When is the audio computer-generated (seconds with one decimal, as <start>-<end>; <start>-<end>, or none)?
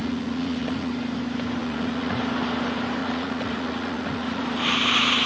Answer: 0.0-0.9; 1.6-2.2; 3.0-4.4